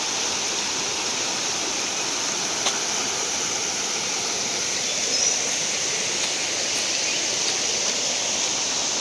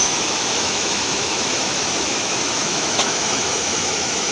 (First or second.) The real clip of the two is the first